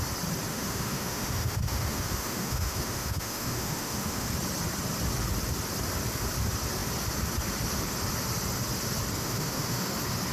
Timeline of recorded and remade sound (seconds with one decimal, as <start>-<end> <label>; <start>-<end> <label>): 0.0-0.5 recorded; 0.5-4.3 remade; 4.3-9.2 recorded; 9.2-9.9 remade; 9.9-10.3 recorded